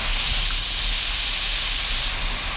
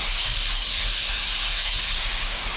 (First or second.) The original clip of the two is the first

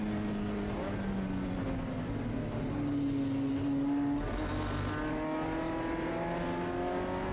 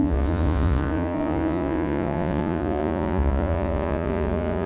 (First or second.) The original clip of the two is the first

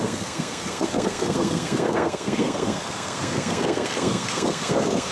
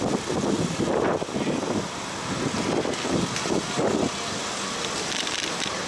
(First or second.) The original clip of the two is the second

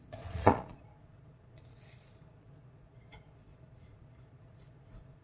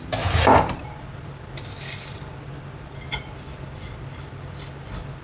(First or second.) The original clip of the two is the second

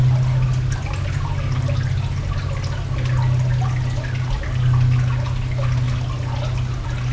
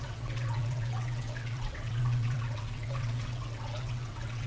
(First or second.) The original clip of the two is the first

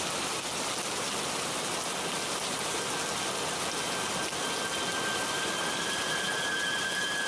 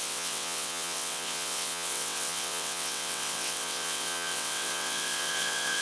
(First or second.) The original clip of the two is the first